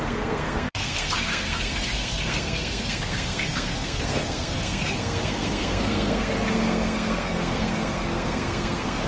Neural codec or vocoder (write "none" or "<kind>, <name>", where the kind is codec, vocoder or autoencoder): codec, SNAC